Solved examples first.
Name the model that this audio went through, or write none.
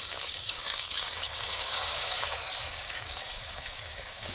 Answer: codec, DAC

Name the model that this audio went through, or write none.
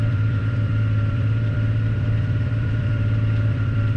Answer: vocoder, BigVGAN v2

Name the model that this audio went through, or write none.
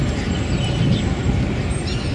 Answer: none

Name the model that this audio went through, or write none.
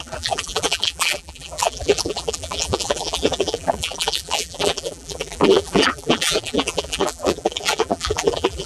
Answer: vocoder, BigVGAN v2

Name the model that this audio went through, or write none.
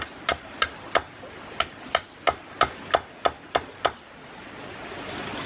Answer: none